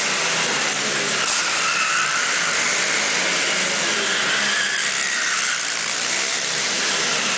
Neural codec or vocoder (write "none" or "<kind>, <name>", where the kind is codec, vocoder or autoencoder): none